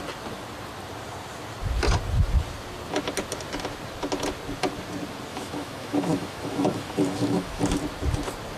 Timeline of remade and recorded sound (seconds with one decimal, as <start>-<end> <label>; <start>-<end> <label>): 0.0-5.3 recorded; 5.3-7.6 remade; 7.6-8.6 recorded